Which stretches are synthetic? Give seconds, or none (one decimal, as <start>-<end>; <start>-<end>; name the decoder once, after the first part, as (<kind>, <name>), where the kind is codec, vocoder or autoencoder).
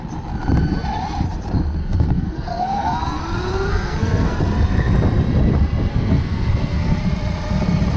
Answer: 1.8-3.2 (codec, SNAC); 3.7-4.4; 5.9-7.0